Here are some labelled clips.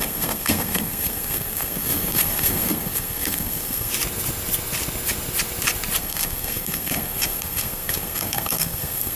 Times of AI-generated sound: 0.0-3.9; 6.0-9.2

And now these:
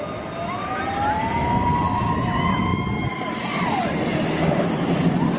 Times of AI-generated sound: none

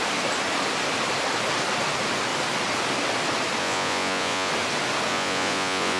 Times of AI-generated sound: 3.6-4.5; 5.1-6.0

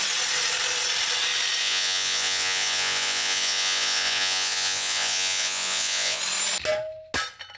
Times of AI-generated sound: 1.6-6.2

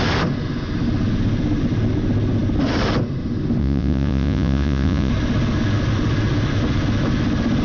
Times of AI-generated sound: 3.6-5.1

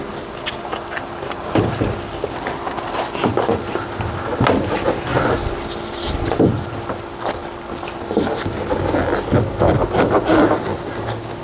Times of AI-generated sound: none

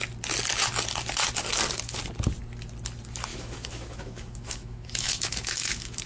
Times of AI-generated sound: 3.3-6.1